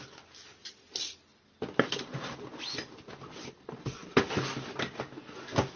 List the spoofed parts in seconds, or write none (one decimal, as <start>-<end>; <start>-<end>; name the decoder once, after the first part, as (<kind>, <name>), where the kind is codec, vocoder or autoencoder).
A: none